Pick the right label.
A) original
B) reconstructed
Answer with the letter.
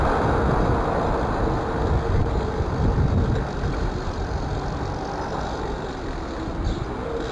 A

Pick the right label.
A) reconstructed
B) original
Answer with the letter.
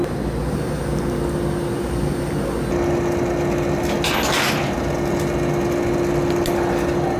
B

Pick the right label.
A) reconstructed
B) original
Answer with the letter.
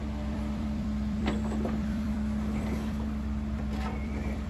A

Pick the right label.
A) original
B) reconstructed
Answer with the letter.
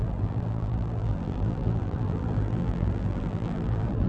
B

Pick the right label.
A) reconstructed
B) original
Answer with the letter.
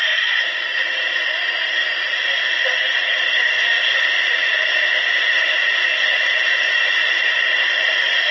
A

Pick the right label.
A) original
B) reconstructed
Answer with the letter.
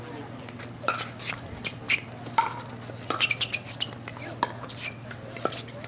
A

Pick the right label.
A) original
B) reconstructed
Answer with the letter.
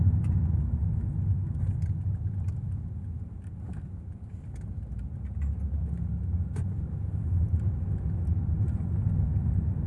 A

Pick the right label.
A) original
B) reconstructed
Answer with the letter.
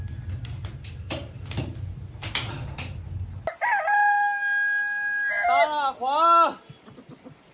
A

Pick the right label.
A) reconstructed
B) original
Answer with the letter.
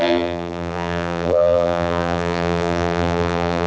A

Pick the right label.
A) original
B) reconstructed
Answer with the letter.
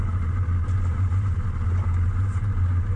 B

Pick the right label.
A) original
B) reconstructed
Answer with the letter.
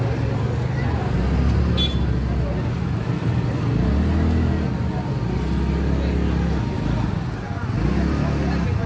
A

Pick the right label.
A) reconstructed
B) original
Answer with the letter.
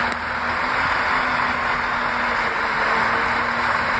B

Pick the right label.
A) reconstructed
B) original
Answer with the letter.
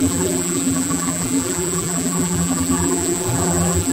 A